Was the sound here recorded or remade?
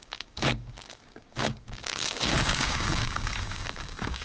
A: remade